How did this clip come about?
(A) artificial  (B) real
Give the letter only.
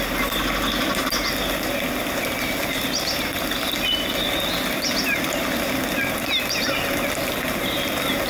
B